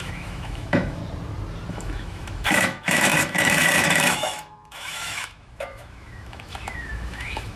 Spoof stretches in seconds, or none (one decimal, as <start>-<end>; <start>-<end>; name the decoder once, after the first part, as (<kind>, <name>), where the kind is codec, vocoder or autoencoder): 0.0-1.0 (autoencoder, DAC-VAE); 1.7-7.6